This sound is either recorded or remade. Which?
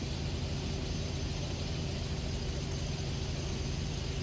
recorded